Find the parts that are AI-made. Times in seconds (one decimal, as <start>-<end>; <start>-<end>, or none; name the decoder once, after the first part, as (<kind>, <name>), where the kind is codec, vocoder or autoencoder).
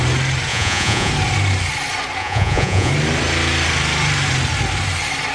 0.5-1.1 (vocoder, Vocos); 2.2-2.9